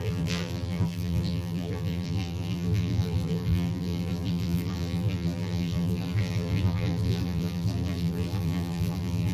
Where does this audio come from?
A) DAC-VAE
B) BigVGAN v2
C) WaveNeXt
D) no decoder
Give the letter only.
B